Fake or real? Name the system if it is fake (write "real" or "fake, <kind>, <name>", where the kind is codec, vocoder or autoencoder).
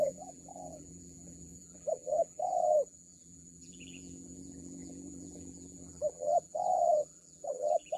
fake, vocoder, BigVGAN v2